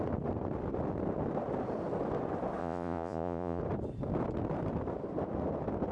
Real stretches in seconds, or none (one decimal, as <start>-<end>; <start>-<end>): 0.0-2.6; 3.6-5.9